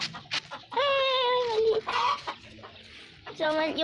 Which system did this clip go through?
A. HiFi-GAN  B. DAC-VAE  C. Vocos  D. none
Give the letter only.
D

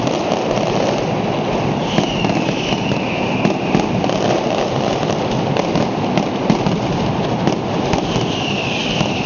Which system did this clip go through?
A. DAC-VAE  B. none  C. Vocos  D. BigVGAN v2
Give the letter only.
B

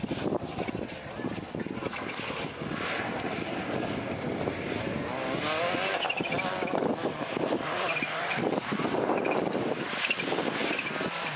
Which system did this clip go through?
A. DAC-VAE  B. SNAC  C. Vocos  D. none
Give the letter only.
D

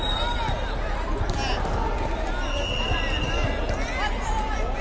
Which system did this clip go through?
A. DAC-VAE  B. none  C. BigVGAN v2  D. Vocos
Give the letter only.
B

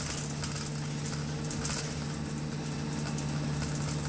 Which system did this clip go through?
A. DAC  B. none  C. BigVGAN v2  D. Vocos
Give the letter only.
B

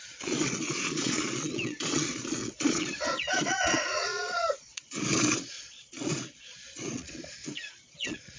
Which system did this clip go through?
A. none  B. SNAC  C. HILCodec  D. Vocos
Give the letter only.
D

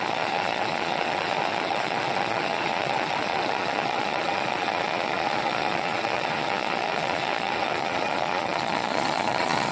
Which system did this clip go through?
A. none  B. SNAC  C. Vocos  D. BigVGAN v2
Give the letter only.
C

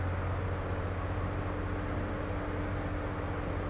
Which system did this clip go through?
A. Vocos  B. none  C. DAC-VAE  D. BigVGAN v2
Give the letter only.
B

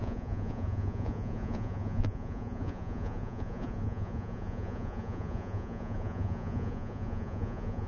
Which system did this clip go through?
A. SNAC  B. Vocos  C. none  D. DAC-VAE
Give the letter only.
B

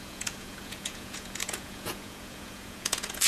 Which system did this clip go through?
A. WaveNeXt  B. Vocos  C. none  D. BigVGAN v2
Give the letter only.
B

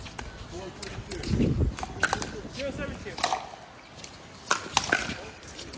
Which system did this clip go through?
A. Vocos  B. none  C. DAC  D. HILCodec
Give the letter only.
B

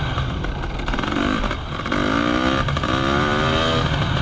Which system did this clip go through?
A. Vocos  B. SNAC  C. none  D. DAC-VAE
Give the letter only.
C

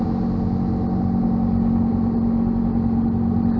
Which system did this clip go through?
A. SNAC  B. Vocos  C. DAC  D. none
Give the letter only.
D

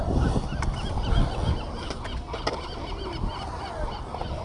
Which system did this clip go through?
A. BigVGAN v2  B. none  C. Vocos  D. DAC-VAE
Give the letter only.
B